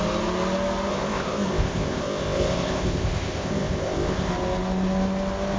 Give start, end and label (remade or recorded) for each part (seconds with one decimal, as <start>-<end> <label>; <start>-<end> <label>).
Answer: 0.0-0.9 recorded; 0.9-4.3 remade; 4.3-5.6 recorded